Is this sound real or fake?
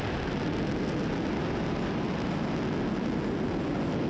real